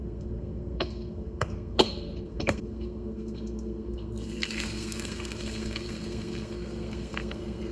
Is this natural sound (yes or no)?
no